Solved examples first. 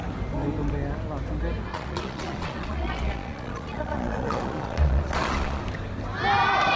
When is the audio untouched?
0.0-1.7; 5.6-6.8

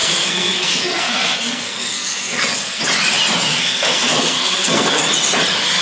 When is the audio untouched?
2.8-3.5; 5.0-5.8

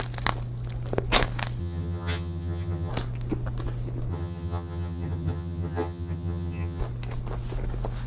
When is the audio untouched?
0.0-1.6; 2.9-4.1; 6.8-8.1